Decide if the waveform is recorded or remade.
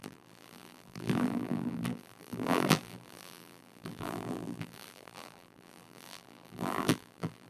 remade